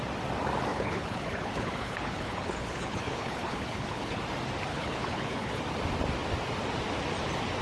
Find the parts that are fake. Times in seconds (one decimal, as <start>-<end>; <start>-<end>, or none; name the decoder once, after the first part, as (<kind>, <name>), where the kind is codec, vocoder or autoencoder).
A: 0.7-4.2 (codec, HILCodec); 4.7-5.6